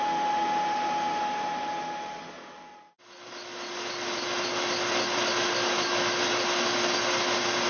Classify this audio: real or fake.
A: real